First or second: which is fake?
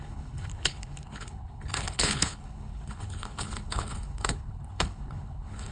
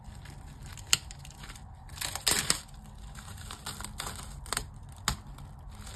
first